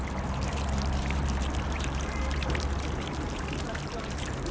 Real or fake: fake